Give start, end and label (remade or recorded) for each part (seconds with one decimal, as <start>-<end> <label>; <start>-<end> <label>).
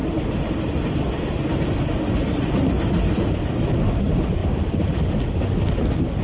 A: 0.0-3.7 remade; 3.7-6.2 recorded